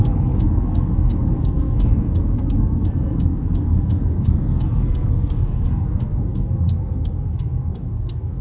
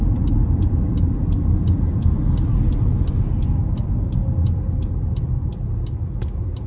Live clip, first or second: second